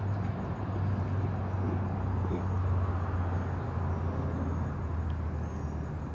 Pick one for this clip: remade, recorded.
recorded